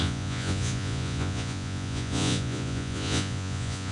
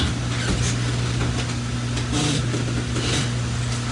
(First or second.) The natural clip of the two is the second